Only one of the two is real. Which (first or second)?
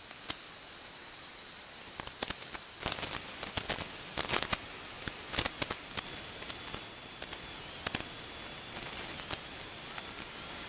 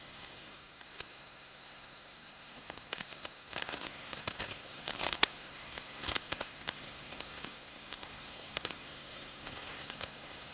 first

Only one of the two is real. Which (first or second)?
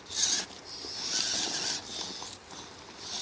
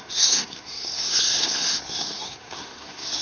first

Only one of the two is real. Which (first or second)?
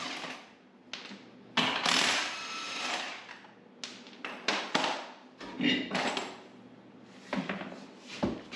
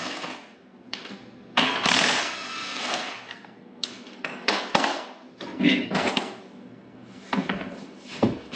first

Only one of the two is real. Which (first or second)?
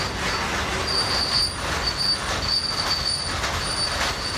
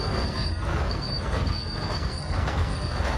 first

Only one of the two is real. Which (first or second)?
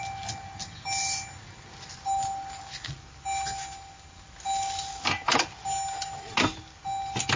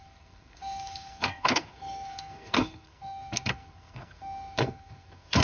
first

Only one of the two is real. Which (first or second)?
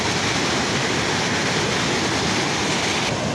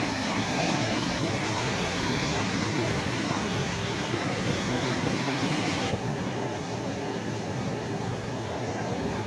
first